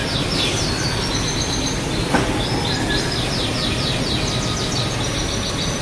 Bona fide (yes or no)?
yes